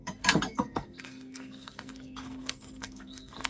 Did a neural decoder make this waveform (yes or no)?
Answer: yes